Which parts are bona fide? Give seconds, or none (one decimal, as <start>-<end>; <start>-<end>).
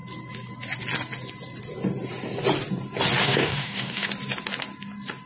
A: 0.0-3.2; 4.1-5.3